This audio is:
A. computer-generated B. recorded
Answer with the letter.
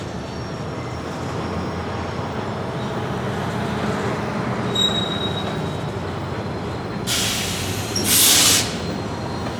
B